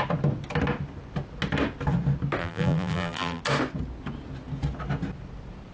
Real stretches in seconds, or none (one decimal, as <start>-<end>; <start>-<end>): 0.0-2.4; 3.4-5.7